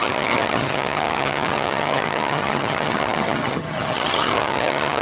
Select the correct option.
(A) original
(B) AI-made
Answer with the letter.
B